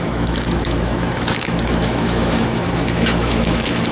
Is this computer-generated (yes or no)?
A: yes